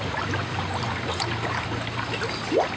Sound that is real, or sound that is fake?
real